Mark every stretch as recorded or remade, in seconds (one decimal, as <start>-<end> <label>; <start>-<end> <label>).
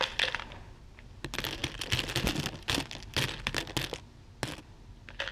0.0-5.3 recorded